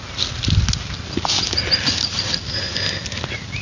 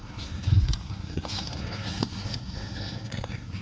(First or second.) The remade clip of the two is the second